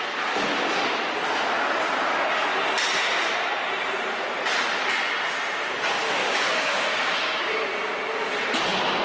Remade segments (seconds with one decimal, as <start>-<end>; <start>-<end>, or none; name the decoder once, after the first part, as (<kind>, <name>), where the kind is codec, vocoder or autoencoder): 6.2-7.5 (codec, DAC)